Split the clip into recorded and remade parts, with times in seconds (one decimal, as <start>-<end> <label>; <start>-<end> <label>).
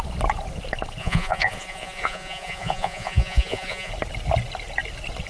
0.0-1.0 recorded; 1.0-3.9 remade; 3.9-5.3 recorded